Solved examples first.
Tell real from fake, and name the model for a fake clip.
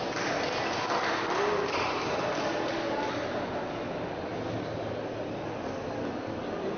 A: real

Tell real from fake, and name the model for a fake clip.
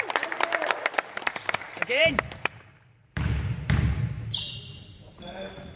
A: fake, vocoder, BigVGAN v2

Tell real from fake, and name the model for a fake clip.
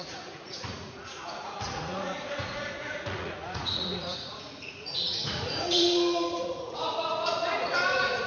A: fake, vocoder, Vocos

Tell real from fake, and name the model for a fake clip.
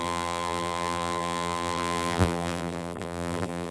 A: fake, vocoder, BigVGAN v2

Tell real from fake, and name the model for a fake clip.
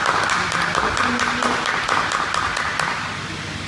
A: real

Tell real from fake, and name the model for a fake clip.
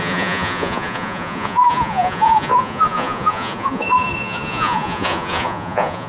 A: fake, vocoder, Vocos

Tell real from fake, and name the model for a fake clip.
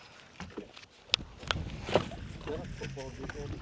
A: real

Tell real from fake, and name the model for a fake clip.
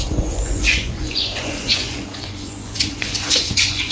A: fake, vocoder, Vocos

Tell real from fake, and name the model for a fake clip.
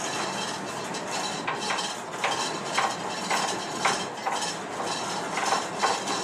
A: real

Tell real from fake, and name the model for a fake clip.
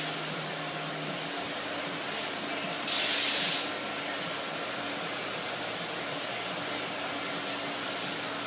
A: real